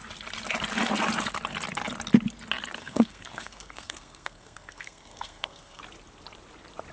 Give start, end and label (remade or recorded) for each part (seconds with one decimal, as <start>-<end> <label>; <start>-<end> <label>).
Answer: 0.0-2.8 recorded; 2.8-5.8 remade; 5.8-6.9 recorded